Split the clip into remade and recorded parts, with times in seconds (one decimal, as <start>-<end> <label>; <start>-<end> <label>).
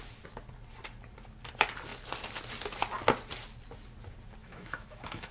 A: 0.0-4.4 recorded; 4.4-5.3 remade